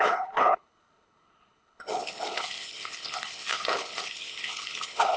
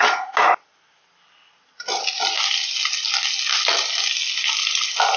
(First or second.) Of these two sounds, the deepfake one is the first